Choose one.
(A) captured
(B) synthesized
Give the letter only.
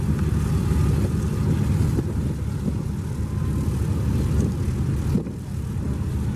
A